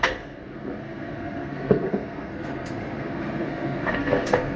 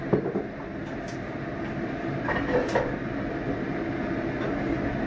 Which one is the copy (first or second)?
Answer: first